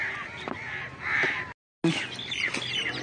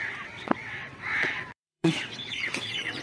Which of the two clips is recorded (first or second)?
first